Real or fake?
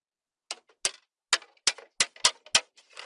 real